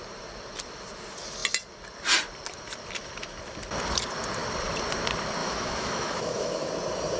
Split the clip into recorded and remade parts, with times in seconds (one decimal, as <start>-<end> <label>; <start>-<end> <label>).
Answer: 0.0-5.4 recorded; 5.4-6.7 remade; 6.7-7.2 recorded